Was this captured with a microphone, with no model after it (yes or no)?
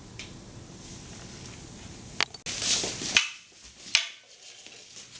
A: yes